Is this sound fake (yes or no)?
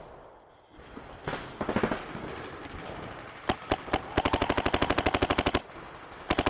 no